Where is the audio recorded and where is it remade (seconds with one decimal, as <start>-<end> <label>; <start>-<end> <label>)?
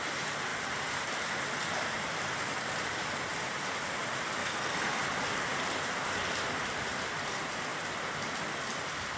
0.0-4.4 recorded; 4.4-5.0 remade; 5.0-9.2 recorded